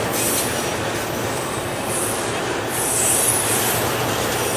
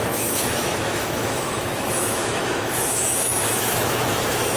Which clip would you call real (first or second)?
first